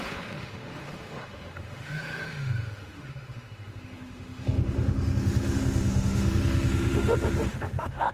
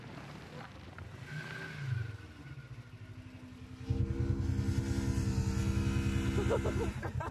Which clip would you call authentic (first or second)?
second